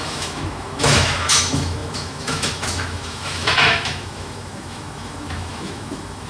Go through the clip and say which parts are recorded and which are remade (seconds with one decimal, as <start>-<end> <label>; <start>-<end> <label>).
0.0-6.3 remade